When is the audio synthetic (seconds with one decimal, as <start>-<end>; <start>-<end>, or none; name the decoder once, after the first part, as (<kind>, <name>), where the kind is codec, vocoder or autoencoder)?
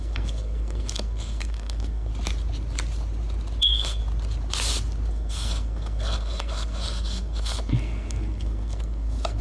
0.0-2.1 (codec, SNAC); 3.6-4.0; 5.1-9.4